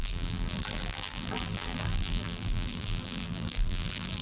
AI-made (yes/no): yes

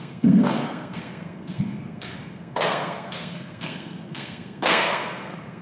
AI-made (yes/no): yes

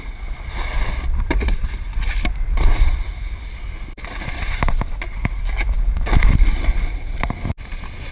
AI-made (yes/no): no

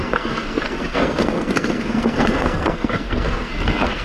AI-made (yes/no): yes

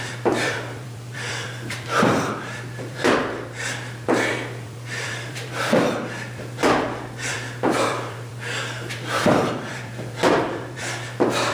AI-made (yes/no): yes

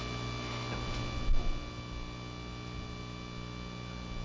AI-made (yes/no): no